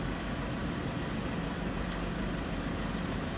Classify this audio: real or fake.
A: real